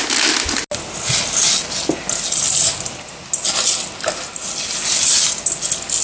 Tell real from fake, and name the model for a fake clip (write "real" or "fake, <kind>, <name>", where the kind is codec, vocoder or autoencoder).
real